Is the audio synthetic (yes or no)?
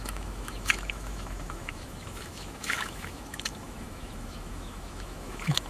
yes